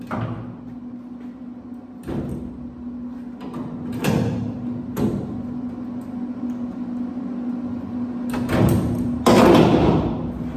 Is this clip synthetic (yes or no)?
no